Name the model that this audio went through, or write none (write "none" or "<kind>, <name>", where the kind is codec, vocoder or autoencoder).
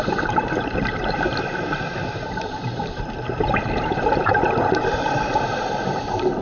vocoder, BigVGAN v2